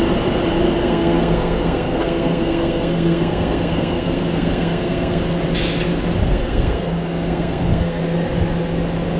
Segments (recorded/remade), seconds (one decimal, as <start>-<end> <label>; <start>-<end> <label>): 0.0-0.8 recorded; 0.8-5.2 remade; 5.2-6.2 recorded; 6.2-8.0 remade; 8.0-9.2 recorded